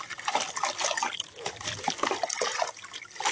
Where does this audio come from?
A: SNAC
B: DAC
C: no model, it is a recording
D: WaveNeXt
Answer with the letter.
C